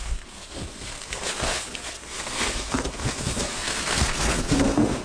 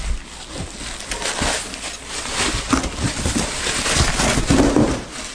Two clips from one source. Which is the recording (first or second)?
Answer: second